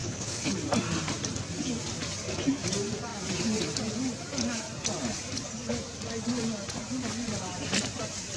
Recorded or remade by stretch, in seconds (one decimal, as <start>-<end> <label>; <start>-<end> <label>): 0.0-0.5 remade; 0.5-8.4 recorded